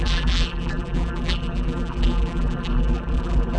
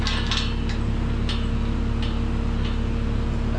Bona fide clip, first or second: second